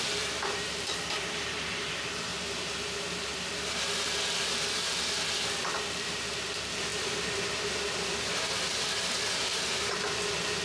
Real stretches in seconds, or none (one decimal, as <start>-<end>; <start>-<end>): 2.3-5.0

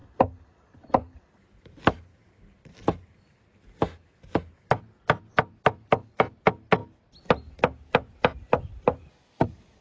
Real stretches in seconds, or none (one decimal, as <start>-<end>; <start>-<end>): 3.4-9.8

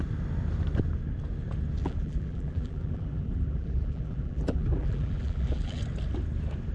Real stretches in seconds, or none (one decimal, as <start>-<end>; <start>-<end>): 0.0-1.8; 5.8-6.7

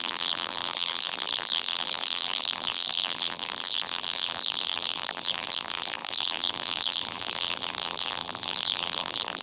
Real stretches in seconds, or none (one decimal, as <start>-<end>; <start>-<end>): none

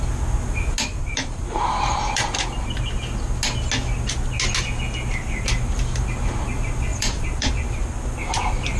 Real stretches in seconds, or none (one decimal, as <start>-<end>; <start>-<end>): 0.0-0.9; 2.5-6.9; 7.5-8.8

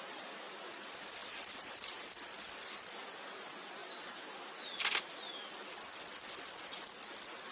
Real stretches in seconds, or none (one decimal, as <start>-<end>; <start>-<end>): 0.0-1.2; 2.0-3.8; 6.0-7.5